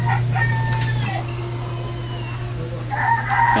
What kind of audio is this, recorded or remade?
recorded